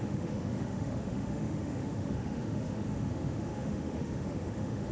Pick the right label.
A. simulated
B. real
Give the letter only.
A